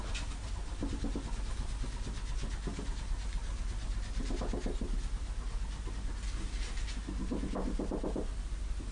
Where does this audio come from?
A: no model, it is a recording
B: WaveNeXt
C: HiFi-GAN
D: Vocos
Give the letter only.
A